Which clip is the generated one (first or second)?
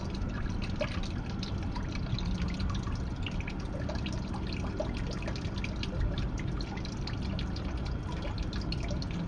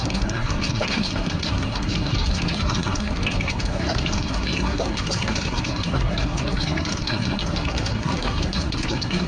second